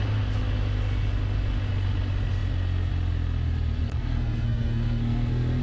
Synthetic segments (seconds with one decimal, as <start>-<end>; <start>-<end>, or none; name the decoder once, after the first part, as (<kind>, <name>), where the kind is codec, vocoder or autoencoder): 3.8-5.6 (codec, SNAC)